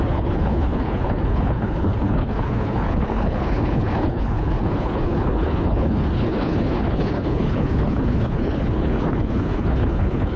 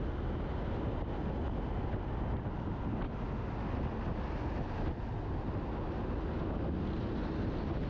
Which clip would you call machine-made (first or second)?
first